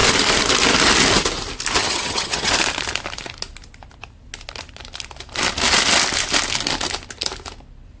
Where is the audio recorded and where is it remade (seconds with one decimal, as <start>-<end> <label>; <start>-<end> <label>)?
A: 0.0-1.8 recorded; 1.8-2.5 remade; 2.5-8.0 recorded

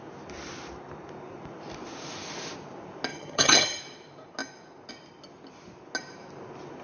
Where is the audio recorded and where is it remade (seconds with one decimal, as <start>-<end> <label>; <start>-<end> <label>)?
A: 0.0-3.1 recorded; 3.1-3.8 remade; 3.8-6.8 recorded

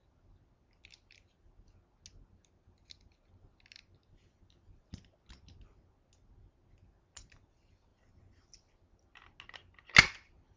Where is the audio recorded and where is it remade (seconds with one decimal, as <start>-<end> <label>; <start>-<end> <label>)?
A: 0.0-10.6 recorded

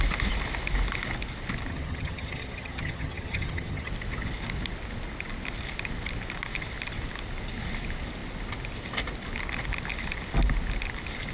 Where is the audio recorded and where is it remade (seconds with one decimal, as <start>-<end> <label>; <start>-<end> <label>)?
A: 0.0-1.7 recorded; 1.7-3.9 remade; 3.9-11.3 recorded

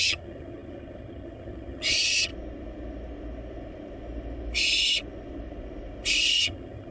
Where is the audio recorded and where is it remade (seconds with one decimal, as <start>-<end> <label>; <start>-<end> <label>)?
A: 0.0-2.3 remade; 2.3-6.4 recorded; 6.4-6.9 remade

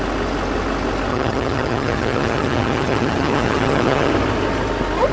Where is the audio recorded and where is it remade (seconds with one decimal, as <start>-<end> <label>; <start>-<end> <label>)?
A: 0.0-1.1 recorded; 1.1-4.1 remade; 4.1-5.1 recorded

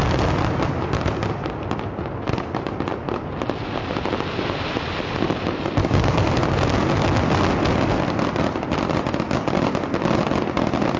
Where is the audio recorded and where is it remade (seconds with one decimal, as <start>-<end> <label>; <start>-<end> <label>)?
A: 0.0-11.0 recorded